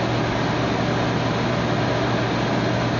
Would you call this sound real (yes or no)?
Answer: yes